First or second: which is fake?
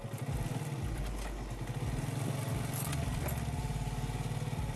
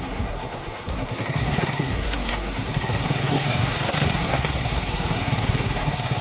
second